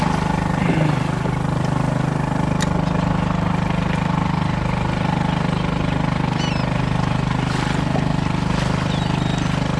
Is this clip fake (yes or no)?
no